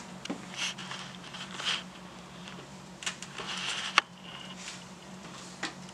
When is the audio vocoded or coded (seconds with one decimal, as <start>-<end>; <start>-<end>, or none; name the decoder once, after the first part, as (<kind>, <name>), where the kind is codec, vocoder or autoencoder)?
0.8-1.5 (vocoder, BigVGAN v2); 2.4-5.4